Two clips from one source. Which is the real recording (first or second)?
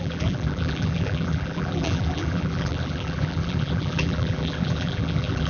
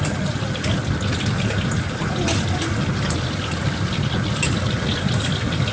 second